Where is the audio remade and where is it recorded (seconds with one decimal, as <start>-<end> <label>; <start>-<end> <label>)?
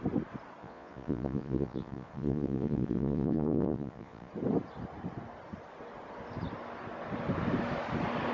0.0-0.6 recorded; 0.6-4.3 remade; 4.3-8.3 recorded